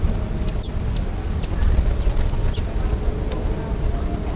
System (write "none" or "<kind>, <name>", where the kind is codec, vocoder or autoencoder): none